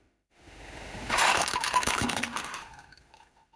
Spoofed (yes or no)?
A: yes